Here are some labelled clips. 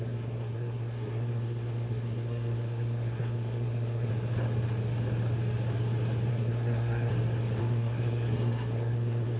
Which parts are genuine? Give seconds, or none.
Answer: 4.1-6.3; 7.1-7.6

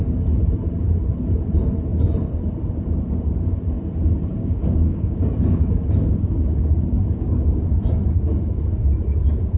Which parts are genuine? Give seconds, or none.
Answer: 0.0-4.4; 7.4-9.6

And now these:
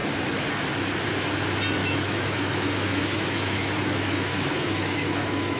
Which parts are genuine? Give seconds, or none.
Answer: 0.0-1.8